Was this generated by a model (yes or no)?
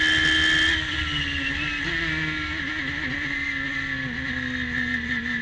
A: no